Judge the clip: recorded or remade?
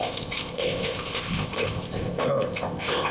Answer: remade